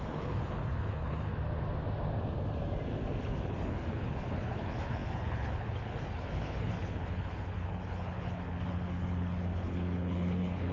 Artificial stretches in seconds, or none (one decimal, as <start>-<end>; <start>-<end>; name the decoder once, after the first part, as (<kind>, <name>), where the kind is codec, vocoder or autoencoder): 0.0-1.3 (codec, HILCodec); 3.2-10.7